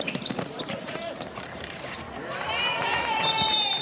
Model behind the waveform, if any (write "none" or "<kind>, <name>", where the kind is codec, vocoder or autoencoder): vocoder, BigVGAN v2